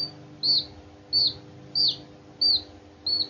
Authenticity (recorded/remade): recorded